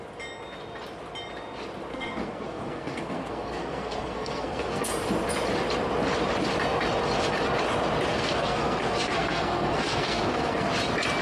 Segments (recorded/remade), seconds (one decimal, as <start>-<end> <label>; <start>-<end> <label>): 0.0-1.9 recorded; 1.9-4.9 remade; 4.9-8.1 recorded; 8.1-10.7 remade; 10.7-11.2 recorded